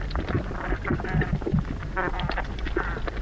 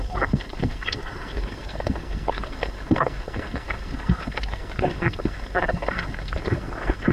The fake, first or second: second